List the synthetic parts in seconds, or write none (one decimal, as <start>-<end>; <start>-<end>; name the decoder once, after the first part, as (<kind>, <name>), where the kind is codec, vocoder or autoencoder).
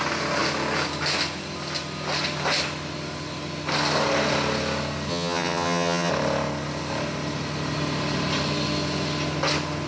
5.1-6.1 (vocoder, HiFi-GAN)